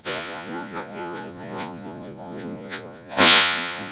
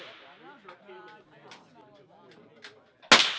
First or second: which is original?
second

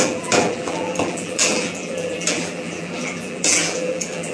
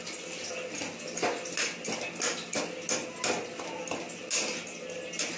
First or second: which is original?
second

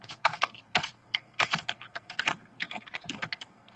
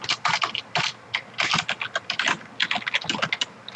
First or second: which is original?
second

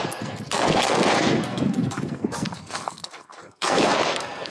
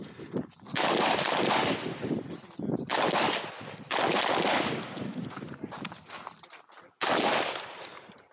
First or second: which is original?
second